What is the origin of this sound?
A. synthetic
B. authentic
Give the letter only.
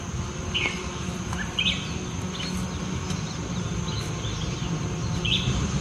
B